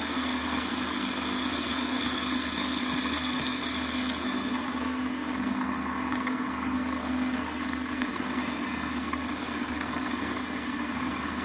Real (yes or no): no